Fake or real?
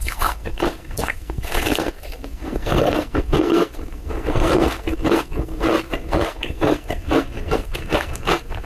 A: fake